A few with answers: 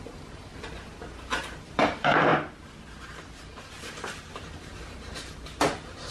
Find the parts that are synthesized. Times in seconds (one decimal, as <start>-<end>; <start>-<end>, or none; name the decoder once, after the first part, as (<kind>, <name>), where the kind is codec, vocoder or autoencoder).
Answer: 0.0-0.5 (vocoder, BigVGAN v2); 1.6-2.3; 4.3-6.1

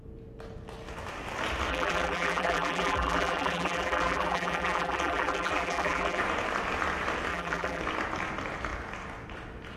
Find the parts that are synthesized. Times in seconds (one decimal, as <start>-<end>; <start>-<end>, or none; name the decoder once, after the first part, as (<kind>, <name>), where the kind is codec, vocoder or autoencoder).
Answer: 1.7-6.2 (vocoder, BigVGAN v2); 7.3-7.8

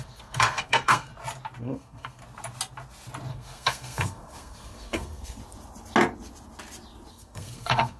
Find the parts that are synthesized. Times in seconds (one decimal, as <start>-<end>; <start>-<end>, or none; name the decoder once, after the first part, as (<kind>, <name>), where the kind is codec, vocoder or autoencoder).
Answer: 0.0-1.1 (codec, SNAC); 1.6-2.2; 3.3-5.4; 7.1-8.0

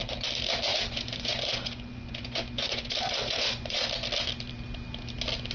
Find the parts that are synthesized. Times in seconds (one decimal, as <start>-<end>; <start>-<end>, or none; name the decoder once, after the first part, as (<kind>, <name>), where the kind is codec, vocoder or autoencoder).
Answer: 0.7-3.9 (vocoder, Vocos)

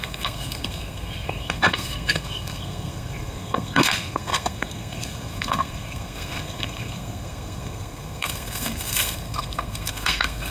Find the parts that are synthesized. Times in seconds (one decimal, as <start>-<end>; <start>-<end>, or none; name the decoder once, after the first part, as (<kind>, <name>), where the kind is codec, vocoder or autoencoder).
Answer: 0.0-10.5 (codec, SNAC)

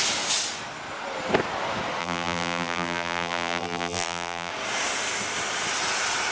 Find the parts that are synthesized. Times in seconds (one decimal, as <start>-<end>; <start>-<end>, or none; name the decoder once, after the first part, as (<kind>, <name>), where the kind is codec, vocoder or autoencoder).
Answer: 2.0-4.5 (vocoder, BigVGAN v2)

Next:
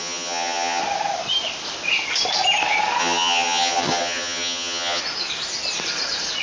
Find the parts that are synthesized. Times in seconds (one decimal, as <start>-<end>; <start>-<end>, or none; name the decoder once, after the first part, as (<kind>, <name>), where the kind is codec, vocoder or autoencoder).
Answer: 0.0-0.8 (vocoder, HiFi-GAN); 3.0-5.0